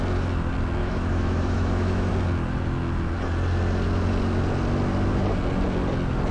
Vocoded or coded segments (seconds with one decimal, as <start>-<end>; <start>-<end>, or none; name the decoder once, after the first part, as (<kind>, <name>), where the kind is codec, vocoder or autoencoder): 0.8-2.1 (autoencoder, DAC-VAE)